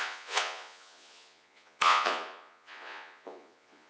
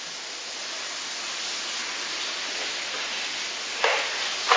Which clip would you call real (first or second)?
second